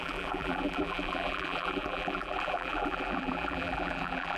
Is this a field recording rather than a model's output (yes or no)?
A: no